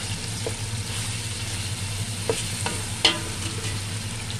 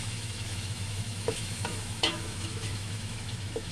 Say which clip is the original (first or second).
first